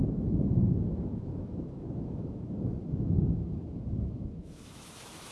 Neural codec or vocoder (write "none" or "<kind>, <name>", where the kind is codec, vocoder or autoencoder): autoencoder, DAC-VAE